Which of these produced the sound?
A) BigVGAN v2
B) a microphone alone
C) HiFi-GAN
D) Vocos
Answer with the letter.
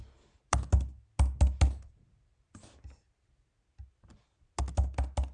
B